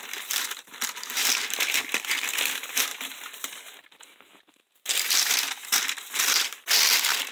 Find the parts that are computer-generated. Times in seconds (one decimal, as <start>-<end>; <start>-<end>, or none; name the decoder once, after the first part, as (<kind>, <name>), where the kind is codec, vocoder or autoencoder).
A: 0.0-2.9 (vocoder, BigVGAN v2); 6.2-7.3